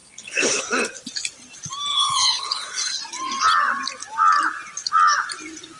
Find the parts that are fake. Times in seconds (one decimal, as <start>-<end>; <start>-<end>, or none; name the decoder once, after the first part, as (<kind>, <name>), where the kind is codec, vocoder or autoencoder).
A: 0.0-0.6 (codec, HILCodec); 1.9-3.0